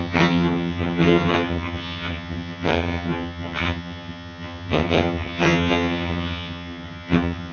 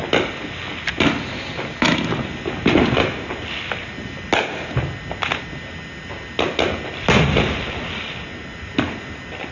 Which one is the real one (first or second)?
second